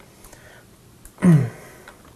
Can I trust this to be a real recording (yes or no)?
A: yes